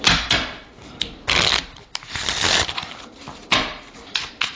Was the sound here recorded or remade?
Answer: recorded